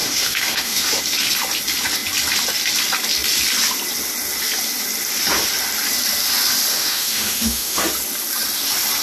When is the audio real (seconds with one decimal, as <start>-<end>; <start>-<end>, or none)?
1.0-6.7; 7.8-9.0